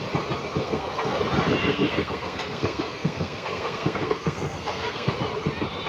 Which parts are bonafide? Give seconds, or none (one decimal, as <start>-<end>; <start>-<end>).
0.0-0.6; 1.2-1.6; 5.1-5.9